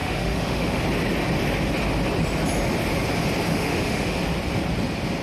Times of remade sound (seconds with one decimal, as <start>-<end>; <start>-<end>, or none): 0.0-0.8; 3.5-4.2